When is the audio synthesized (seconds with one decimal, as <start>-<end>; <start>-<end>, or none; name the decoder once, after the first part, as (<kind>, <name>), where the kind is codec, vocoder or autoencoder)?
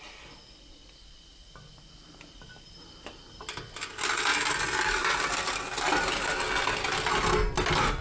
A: none